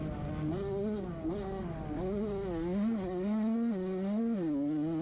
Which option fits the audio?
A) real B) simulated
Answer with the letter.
A